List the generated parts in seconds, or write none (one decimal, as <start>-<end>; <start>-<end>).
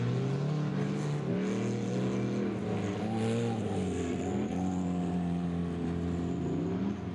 none